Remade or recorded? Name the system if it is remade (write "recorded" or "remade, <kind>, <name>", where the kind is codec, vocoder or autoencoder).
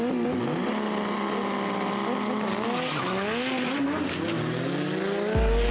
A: recorded